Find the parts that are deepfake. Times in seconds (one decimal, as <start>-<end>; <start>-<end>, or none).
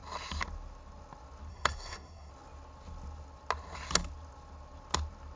1.5-2.3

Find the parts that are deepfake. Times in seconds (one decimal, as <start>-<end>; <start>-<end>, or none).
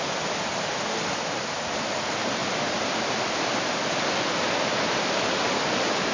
none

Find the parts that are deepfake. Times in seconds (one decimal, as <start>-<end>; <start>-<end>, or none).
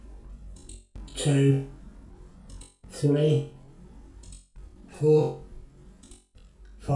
none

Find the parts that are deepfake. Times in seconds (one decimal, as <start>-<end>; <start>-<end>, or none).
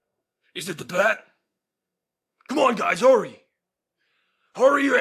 0.0-2.5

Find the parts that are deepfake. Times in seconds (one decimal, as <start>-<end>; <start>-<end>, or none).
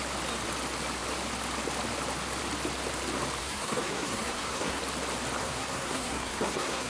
3.4-4.8; 5.4-6.9